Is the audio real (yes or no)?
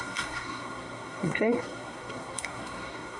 no